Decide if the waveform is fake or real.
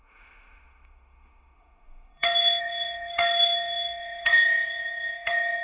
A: fake